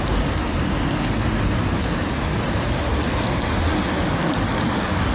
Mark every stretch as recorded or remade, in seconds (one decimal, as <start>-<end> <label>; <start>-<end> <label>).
0.0-1.8 recorded; 1.8-3.6 remade; 3.6-5.1 recorded